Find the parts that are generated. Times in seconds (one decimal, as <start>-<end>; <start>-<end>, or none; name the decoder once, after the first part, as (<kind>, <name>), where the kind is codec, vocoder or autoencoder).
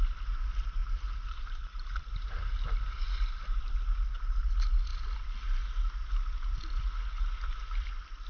0.8-2.0 (vocoder, BigVGAN v2)